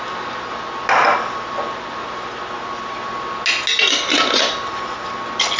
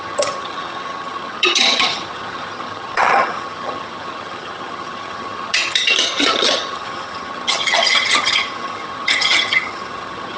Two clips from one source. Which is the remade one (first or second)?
second